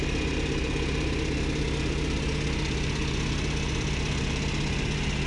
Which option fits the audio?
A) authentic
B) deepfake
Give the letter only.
A